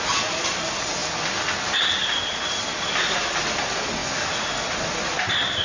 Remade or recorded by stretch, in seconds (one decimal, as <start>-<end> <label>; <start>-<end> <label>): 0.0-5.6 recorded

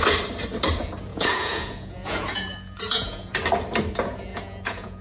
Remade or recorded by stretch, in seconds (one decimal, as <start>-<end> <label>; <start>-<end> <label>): 0.0-1.1 recorded; 1.1-3.3 remade; 3.3-4.3 recorded; 4.3-5.0 remade

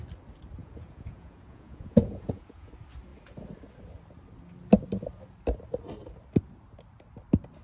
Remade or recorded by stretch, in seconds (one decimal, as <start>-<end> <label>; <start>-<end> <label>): 0.0-0.6 recorded; 0.6-2.7 remade; 2.7-7.6 recorded

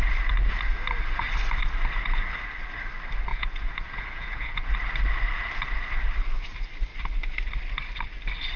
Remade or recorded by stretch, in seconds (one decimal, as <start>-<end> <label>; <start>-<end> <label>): 0.0-3.3 recorded; 3.3-4.7 remade; 4.7-8.6 recorded

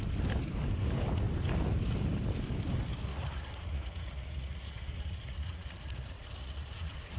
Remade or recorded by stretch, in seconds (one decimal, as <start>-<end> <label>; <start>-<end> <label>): 0.0-3.1 recorded; 3.1-7.2 remade

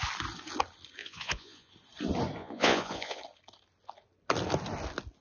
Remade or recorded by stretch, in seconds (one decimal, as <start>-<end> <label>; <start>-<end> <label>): 0.0-1.0 recorded; 1.0-1.7 remade; 1.7-2.4 recorded; 2.4-3.2 remade; 3.2-5.2 recorded

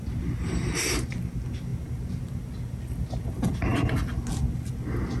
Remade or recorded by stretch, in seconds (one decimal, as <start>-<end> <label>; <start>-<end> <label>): 0.0-5.2 recorded